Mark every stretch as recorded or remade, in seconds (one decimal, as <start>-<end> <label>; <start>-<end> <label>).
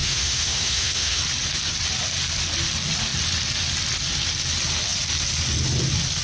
0.0-1.2 remade; 1.2-6.2 recorded